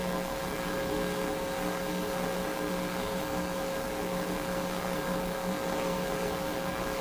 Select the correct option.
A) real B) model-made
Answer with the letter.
B